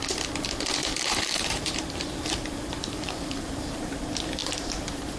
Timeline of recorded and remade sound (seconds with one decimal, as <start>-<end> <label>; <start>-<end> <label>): 0.0-0.8 recorded; 0.8-3.8 remade; 3.8-5.2 recorded